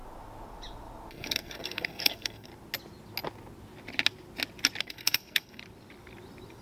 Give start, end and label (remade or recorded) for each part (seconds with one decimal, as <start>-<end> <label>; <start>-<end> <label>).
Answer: 0.0-1.1 recorded; 1.1-2.5 remade; 2.5-4.8 recorded; 4.8-5.6 remade; 5.6-6.6 recorded